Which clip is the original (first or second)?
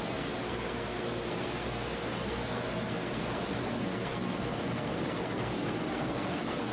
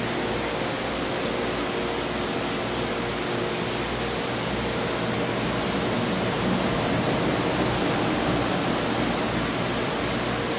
second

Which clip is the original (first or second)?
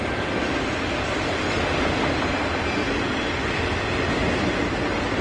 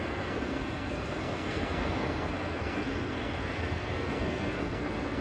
first